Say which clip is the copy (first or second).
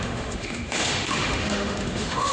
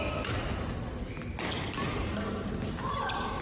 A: first